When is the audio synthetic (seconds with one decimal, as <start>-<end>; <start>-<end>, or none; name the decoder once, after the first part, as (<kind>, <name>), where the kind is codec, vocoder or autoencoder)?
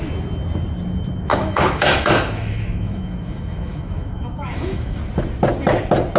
1.3-5.0 (autoencoder, DAC-VAE)